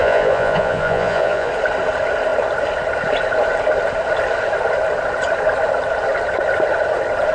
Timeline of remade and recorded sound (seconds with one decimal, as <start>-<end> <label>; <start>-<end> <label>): 0.0-1.5 remade; 1.5-7.3 recorded